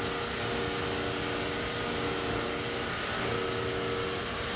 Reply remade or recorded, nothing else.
recorded